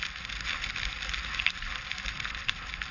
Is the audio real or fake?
real